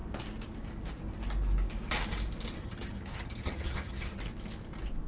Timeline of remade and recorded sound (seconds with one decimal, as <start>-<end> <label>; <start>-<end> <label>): 0.0-2.6 recorded; 2.6-4.2 remade; 4.2-5.1 recorded